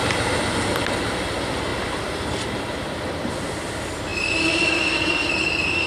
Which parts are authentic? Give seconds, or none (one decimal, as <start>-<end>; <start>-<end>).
0.0-1.7; 3.0-4.1